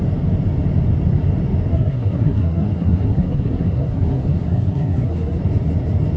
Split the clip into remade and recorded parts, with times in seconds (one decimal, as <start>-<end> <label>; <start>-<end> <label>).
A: 0.0-1.7 recorded; 1.7-5.4 remade; 5.4-6.2 recorded